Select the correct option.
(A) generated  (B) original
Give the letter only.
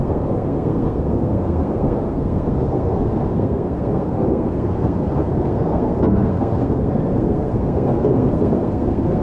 A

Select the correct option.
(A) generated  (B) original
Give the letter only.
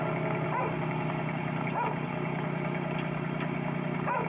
B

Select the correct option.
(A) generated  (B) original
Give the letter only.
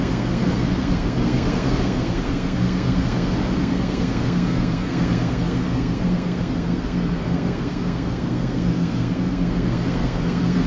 A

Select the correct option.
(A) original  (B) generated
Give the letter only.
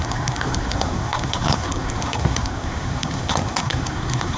B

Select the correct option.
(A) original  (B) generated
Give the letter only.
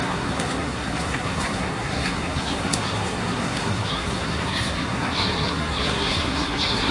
B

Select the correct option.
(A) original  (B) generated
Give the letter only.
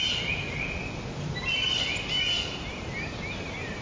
A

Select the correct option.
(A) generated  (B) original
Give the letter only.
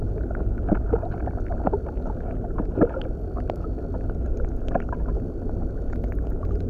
B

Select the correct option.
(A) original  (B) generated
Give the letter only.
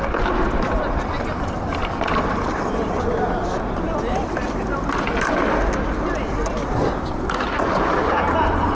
A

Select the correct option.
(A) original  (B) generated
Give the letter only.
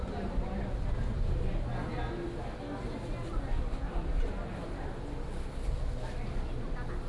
A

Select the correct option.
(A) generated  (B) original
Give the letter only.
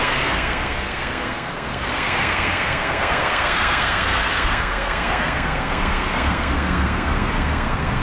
A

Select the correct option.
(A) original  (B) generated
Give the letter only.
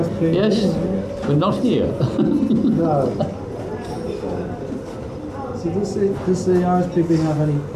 A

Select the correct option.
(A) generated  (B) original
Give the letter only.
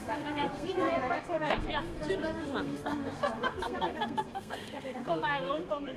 A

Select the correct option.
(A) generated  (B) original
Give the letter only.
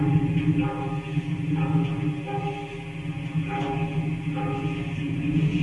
B